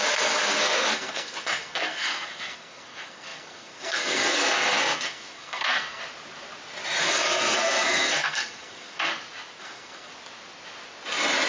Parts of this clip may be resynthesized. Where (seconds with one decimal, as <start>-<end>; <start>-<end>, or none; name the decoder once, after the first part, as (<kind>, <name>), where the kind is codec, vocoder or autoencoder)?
0.0-6.0 (codec, SNAC); 7.0-9.1; 9.6-10.1